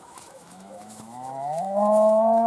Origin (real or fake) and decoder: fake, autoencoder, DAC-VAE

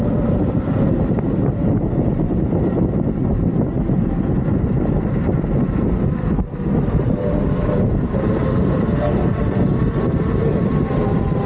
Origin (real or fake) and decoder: fake, vocoder, BigVGAN v2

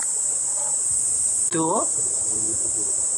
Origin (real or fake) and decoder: fake, vocoder, BigVGAN v2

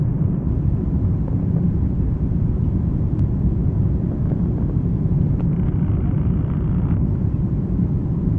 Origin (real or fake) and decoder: fake, vocoder, BigVGAN v2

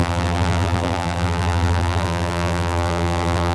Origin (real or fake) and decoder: fake, vocoder, BigVGAN v2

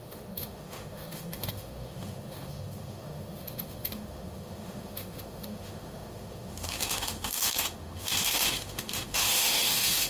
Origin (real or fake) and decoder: fake, autoencoder, DAC-VAE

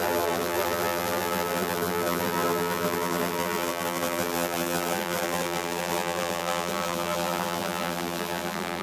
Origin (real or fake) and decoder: fake, vocoder, BigVGAN v2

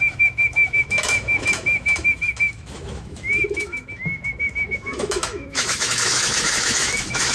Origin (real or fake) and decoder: fake, autoencoder, DAC-VAE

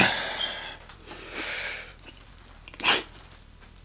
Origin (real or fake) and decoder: real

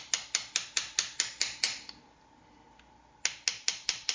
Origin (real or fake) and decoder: real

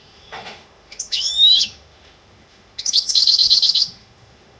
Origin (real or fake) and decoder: fake, autoencoder, DAC-VAE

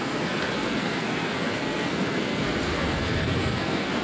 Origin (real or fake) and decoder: fake, codec, SNAC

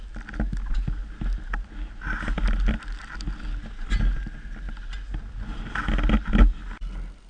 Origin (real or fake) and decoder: real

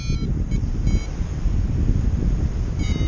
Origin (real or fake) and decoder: real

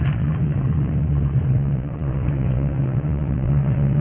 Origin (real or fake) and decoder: fake, vocoder, WaveNeXt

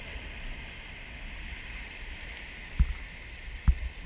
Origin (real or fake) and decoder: real